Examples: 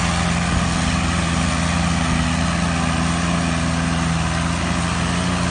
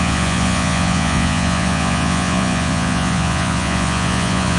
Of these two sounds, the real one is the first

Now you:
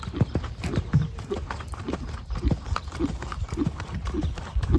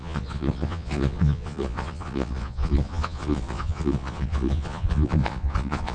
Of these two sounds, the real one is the first